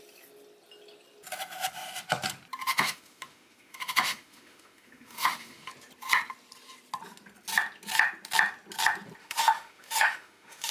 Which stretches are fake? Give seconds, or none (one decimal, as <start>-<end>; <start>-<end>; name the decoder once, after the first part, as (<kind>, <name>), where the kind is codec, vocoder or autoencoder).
2.7-5.7 (autoencoder, DAC-VAE); 9.2-10.7